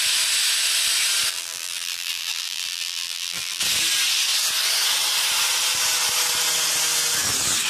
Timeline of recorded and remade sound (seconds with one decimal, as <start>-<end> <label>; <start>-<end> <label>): 0.0-1.3 recorded; 1.3-3.6 remade; 3.6-7.7 recorded